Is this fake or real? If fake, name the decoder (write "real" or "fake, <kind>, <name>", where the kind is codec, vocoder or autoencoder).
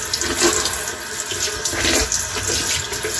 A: real